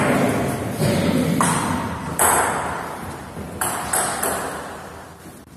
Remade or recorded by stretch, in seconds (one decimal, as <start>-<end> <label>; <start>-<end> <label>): 0.0-0.6 recorded; 0.6-4.0 remade; 4.0-5.6 recorded